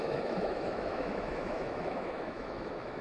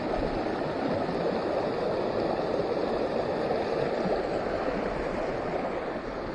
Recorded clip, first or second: second